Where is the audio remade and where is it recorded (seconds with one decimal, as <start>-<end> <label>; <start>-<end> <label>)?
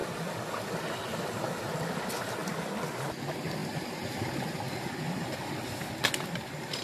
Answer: 0.0-6.8 recorded